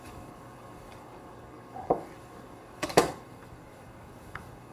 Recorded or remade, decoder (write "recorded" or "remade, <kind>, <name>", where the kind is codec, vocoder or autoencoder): remade, codec, DAC